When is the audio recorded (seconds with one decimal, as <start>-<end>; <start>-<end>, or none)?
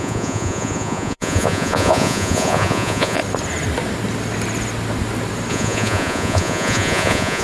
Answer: 3.2-5.5